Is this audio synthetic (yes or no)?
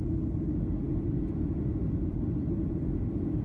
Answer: no